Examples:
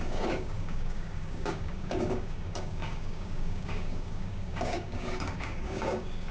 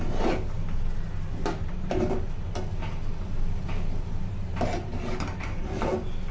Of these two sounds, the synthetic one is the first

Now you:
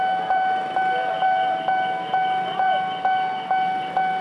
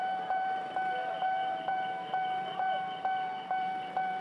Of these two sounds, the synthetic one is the second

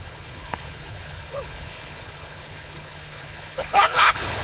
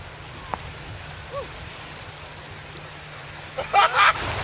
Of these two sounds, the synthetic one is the first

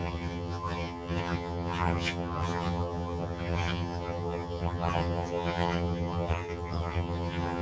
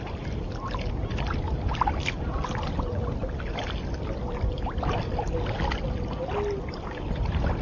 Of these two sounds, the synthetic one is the first